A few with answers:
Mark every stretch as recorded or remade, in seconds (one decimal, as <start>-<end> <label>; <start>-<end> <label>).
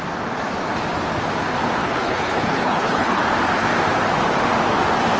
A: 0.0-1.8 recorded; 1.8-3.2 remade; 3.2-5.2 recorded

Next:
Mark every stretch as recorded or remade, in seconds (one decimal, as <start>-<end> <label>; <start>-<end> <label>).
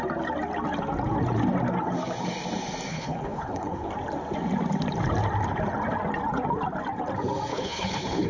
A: 0.0-2.9 recorded; 2.9-3.9 remade; 3.9-7.5 recorded; 7.5-8.3 remade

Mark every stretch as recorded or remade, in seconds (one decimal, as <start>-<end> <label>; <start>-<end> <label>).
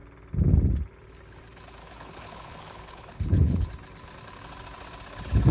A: 0.0-1.8 recorded; 1.8-3.7 remade; 3.7-5.5 recorded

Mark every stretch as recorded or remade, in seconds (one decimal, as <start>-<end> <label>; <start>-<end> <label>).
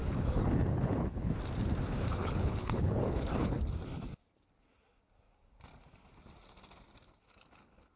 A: 0.0-1.3 remade; 1.3-2.2 recorded; 2.2-3.6 remade; 3.6-8.0 recorded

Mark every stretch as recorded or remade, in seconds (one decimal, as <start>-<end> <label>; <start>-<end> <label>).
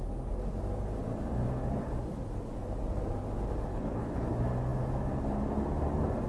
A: 0.0-3.7 recorded; 3.7-4.3 remade; 4.3-6.3 recorded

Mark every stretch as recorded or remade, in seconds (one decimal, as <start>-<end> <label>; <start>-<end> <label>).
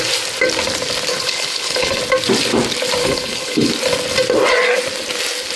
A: 0.0-1.1 recorded; 1.1-2.0 remade; 2.0-3.0 recorded; 3.0-3.7 remade; 3.7-5.6 recorded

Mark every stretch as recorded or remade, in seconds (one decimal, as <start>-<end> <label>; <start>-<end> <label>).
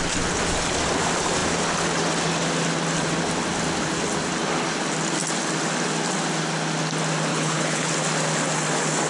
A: 0.0-7.3 recorded; 7.3-7.9 remade; 7.9-9.1 recorded